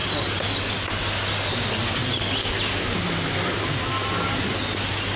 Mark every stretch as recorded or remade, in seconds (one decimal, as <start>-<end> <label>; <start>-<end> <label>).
0.0-5.2 recorded